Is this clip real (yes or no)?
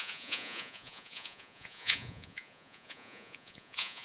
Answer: no